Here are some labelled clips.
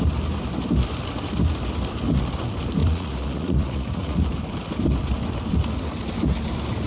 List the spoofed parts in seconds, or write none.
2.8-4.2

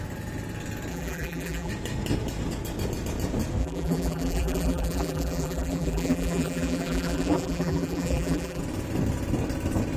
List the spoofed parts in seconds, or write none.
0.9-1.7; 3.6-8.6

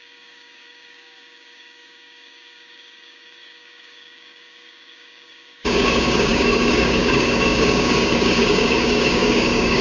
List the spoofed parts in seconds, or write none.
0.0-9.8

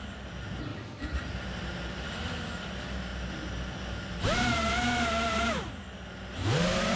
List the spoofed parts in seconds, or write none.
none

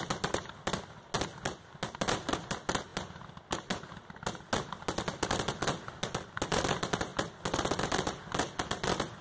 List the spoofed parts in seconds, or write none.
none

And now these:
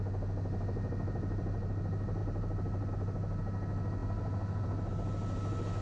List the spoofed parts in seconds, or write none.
none

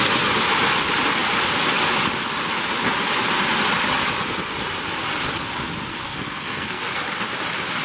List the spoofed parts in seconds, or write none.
5.9-7.0